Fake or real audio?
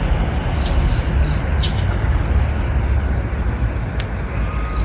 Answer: real